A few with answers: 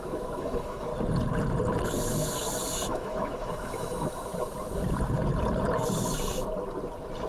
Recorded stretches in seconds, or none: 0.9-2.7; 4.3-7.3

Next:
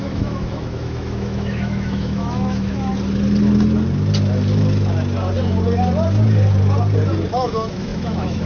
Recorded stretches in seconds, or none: 2.9-7.3

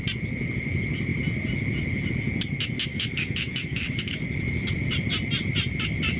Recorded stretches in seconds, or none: 0.0-2.9; 4.2-6.2

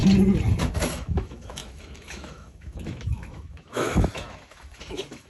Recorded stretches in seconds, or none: 0.0-0.7

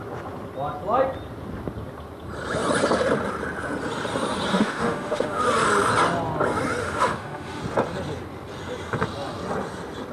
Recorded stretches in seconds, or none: 0.0-4.5; 5.4-6.8; 7.6-10.1